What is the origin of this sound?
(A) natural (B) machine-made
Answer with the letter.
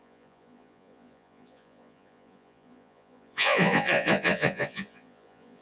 B